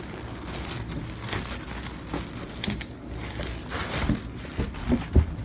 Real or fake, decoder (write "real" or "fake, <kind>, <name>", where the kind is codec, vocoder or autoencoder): real